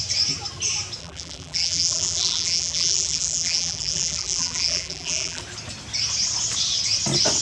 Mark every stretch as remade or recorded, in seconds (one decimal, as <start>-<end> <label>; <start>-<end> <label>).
0.0-1.0 recorded; 1.0-5.4 remade; 5.4-7.4 recorded